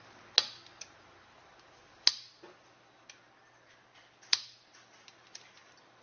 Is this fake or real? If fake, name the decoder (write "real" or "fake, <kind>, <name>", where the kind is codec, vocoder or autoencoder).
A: real